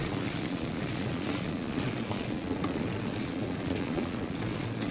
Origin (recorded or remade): remade